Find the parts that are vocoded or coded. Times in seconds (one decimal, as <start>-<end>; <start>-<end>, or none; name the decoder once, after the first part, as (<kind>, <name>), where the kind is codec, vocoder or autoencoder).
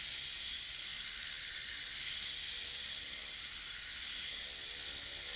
none